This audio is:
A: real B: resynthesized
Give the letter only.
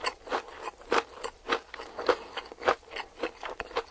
A